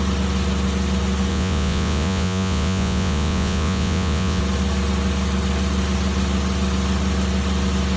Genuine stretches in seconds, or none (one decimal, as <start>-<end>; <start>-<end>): 0.0-1.3; 4.4-8.0